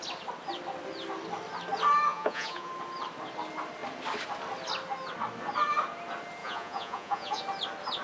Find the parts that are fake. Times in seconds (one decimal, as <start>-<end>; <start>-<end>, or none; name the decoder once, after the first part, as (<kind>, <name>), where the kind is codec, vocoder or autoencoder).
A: 2.1-2.7 (vocoder, Vocos); 6.4-7.4